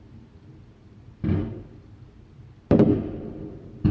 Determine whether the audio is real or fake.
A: real